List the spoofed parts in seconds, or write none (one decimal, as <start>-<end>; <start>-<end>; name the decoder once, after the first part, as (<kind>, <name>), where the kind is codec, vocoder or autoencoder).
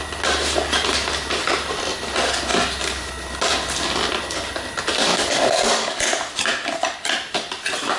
5.1-6.0 (codec, DAC)